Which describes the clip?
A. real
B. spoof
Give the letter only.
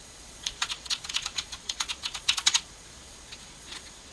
B